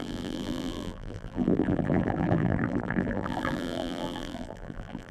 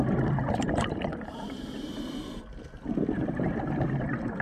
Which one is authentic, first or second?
second